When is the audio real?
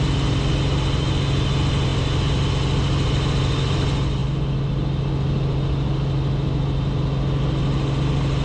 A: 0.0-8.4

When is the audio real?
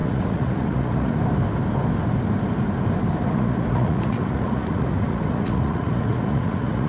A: 1.2-3.2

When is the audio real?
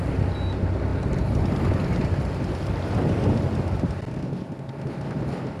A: 0.0-5.6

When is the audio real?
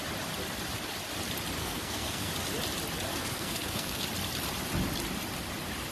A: 0.0-1.6; 2.3-3.1; 4.0-5.9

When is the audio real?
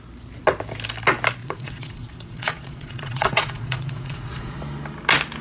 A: 0.0-1.4; 4.6-5.4